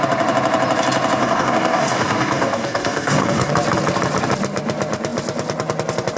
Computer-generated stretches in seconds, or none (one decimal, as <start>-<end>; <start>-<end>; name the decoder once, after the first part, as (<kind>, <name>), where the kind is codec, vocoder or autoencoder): 1.2-3.5 (codec, DAC)